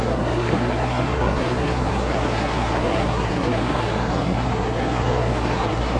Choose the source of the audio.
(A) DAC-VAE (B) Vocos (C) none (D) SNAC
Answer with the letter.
D